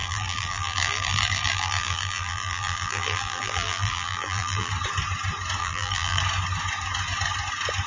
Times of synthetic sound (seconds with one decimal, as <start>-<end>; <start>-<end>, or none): 0.0-4.7; 5.6-6.2